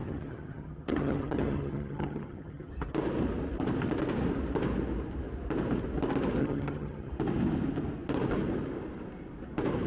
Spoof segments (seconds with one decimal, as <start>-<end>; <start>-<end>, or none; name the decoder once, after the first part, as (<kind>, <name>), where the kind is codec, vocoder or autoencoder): 0.0-2.7 (vocoder, HiFi-GAN); 6.4-7.1